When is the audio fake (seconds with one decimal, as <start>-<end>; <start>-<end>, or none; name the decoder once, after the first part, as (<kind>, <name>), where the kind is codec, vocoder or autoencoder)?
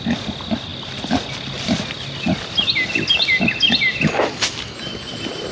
none